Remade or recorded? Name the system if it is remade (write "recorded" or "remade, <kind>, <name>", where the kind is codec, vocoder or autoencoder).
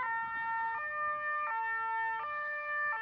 recorded